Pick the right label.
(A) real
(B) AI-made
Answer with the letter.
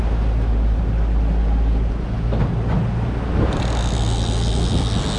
A